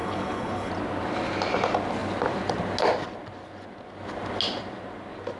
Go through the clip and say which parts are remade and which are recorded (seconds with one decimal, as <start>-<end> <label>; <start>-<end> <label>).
0.0-0.7 remade; 0.7-5.4 recorded